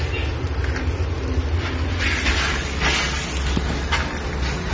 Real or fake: real